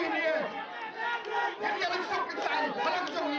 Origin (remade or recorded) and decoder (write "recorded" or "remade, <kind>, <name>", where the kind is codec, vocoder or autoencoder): recorded